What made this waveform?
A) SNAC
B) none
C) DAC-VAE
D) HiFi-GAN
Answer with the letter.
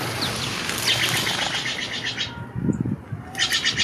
B